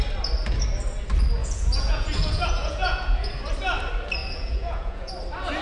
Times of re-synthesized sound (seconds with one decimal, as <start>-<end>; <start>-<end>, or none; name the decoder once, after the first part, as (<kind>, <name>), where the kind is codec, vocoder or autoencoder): 1.4-3.3 (vocoder, Vocos); 4.2-5.1